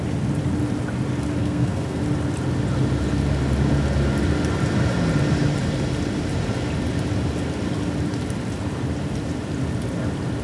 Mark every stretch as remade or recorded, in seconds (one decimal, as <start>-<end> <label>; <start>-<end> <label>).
0.0-1.4 recorded; 1.4-2.0 remade; 2.0-10.4 recorded